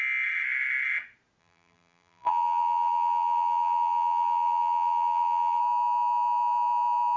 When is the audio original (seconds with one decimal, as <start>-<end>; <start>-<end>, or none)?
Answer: 0.0-1.4; 5.6-7.2